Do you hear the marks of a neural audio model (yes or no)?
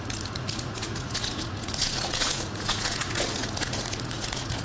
yes